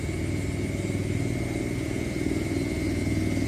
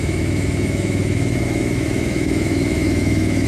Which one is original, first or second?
first